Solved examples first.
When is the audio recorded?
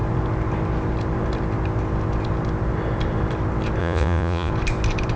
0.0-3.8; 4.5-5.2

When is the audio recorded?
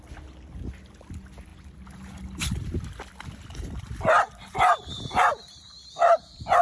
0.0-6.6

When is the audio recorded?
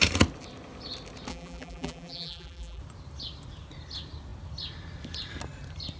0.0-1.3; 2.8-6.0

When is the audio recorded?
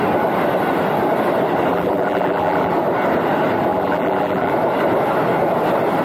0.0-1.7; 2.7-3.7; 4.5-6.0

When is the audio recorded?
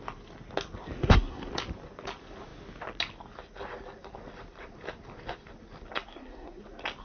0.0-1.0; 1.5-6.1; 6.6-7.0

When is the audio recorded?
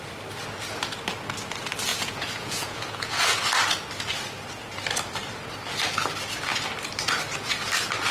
0.0-1.9; 3.4-8.1